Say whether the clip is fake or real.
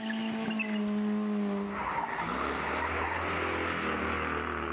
real